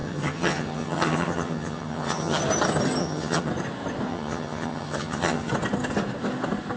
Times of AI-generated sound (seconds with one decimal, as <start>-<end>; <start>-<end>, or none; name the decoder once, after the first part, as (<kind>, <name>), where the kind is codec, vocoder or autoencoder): 0.0-2.4 (vocoder, HiFi-GAN); 3.0-3.5; 4.1-5.5